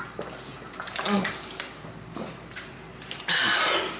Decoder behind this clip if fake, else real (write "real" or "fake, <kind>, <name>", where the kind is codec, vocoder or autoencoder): real